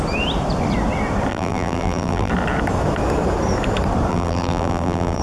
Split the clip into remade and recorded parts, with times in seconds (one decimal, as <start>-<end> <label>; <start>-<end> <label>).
0.0-1.3 recorded; 1.3-2.3 remade; 2.3-4.1 recorded; 4.1-5.2 remade